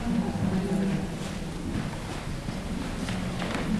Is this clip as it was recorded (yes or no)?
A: yes